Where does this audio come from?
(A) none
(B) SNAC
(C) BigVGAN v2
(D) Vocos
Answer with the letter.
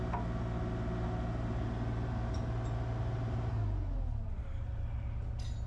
A